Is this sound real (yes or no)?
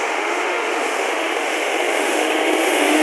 no